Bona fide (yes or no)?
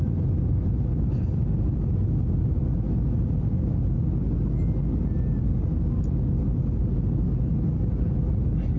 yes